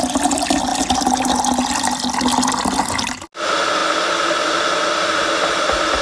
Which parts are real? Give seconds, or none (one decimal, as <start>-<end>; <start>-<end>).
0.0-6.0